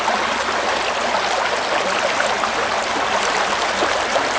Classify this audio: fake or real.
real